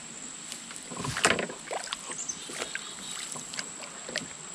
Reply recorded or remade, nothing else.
recorded